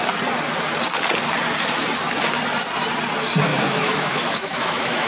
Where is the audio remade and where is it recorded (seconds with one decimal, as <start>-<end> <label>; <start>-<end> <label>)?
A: 0.0-3.5 recorded; 3.5-5.1 remade